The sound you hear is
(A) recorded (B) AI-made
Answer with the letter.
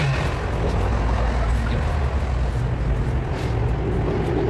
A